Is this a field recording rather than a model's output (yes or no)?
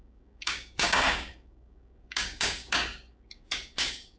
no